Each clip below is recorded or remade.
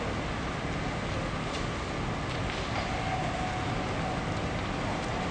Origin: recorded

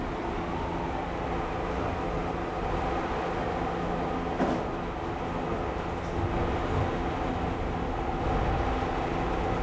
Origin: recorded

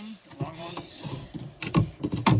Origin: remade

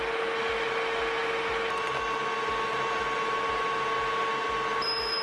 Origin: recorded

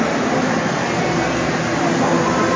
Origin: recorded